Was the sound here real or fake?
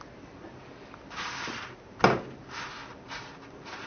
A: real